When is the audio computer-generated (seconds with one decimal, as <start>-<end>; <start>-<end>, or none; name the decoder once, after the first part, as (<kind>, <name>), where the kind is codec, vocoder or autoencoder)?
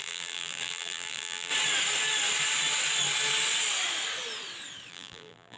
0.0-1.5 (vocoder, BigVGAN v2); 4.9-5.6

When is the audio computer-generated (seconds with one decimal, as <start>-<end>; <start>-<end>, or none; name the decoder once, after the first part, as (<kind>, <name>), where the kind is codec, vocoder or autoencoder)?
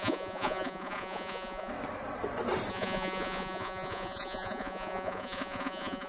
0.0-1.7 (vocoder, Vocos); 2.7-6.1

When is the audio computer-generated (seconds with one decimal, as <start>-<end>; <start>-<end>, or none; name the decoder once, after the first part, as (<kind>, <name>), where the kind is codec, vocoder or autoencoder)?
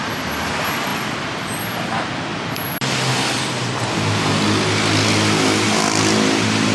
0.9-1.6 (vocoder, BigVGAN v2); 2.3-4.3